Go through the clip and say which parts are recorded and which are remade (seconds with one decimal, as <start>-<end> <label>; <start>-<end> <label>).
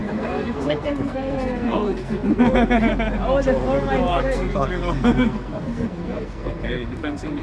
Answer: 0.0-2.8 remade; 2.8-4.1 recorded; 4.1-7.4 remade